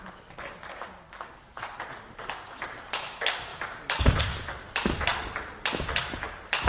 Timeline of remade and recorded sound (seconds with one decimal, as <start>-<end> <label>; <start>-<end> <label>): 0.0-1.5 recorded; 1.5-3.0 remade; 3.0-3.5 recorded; 3.5-4.2 remade; 4.2-6.7 recorded